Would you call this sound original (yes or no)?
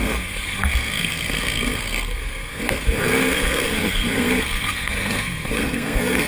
no